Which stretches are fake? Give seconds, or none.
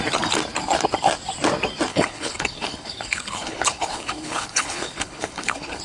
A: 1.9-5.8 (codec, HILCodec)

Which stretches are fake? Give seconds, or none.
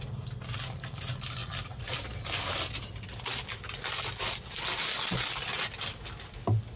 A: none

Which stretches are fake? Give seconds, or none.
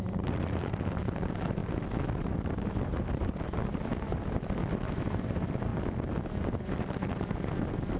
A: 0.0-1.6 (vocoder, BigVGAN v2); 2.2-5.7; 6.6-8.0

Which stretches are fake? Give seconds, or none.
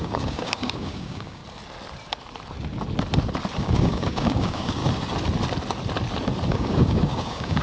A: 0.0-1.4 (codec, DAC); 3.6-4.8; 6.5-7.6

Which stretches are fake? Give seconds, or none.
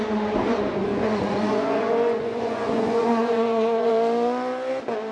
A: 0.9-3.9 (vocoder, Vocos)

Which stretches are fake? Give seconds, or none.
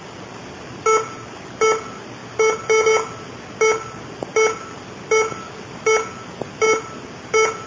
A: none